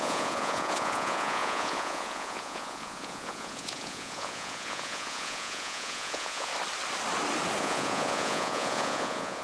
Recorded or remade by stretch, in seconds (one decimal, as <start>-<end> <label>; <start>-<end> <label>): 0.0-6.5 remade; 6.5-7.6 recorded; 7.6-9.4 remade